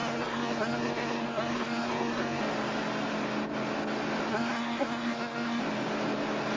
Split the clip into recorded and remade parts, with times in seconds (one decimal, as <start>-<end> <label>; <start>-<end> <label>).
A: 0.0-2.4 remade; 2.4-4.3 recorded; 4.3-5.6 remade; 5.6-6.6 recorded